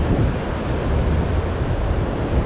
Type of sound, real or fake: real